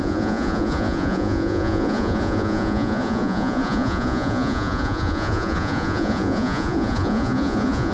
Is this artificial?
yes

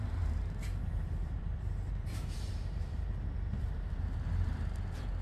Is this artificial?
yes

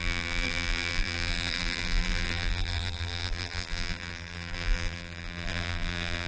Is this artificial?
yes